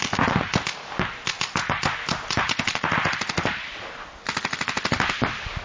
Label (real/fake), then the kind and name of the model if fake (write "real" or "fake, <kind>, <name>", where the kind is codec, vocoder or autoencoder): real